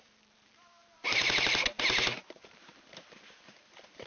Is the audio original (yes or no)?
no